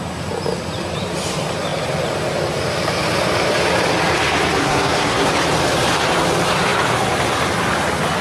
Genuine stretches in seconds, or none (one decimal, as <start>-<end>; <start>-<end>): 0.0-4.6; 5.3-8.2